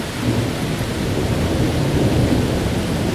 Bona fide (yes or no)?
yes